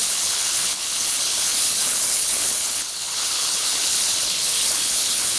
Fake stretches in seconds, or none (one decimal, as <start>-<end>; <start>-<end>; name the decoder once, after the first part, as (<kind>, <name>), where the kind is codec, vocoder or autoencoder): 0.0-5.4 (codec, HILCodec)